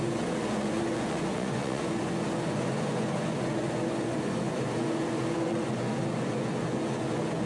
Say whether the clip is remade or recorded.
remade